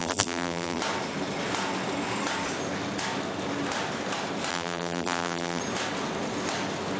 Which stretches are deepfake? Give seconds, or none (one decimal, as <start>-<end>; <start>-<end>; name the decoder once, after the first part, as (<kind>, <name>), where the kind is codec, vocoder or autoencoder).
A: 0.0-0.8 (vocoder, BigVGAN v2); 4.5-5.6